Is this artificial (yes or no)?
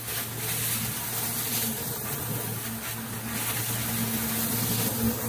no